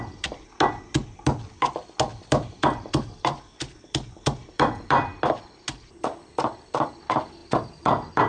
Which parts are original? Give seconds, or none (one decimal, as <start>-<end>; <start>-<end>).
0.0-2.1; 5.5-8.3